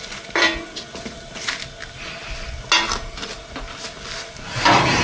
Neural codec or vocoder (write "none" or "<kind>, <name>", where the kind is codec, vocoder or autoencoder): none